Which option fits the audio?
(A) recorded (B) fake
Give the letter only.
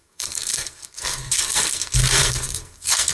B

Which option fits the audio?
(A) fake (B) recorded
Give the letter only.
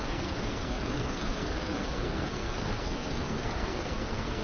A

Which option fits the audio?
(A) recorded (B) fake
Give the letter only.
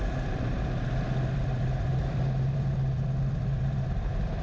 B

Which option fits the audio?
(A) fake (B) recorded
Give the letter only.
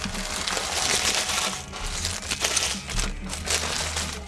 B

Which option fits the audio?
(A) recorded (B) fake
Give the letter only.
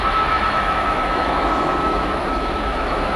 B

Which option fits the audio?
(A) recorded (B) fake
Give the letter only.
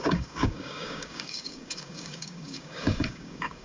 B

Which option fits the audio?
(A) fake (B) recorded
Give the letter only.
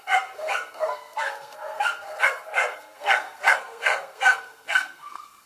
A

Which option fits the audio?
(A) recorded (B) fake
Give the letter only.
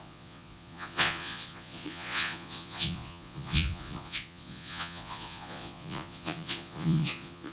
B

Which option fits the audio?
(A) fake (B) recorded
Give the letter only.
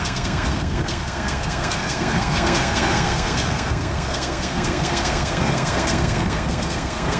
A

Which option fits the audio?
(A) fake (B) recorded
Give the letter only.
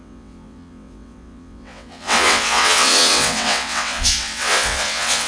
A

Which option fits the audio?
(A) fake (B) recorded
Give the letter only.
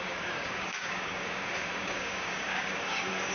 A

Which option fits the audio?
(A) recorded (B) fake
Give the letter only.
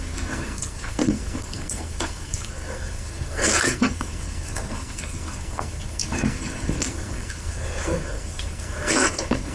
B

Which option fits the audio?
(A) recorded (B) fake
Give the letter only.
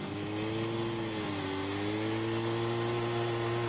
A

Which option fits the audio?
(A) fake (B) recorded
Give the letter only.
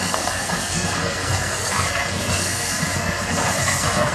A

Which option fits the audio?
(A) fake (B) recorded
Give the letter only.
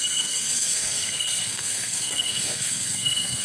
A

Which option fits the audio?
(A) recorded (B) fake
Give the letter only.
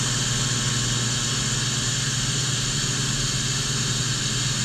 A